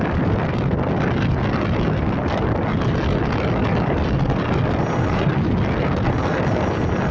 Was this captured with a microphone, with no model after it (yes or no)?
yes